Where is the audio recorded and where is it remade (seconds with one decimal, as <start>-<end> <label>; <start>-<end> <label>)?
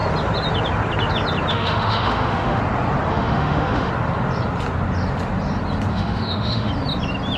0.0-1.5 recorded; 1.5-2.6 remade; 2.6-3.1 recorded; 3.1-3.9 remade; 3.9-5.9 recorded; 5.9-6.7 remade; 6.7-7.4 recorded